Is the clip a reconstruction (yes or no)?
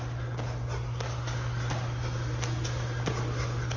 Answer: no